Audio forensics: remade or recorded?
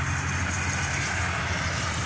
recorded